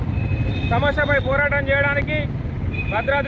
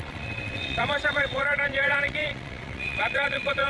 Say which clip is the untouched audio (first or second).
first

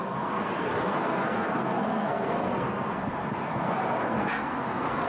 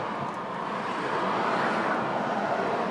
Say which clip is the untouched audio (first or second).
second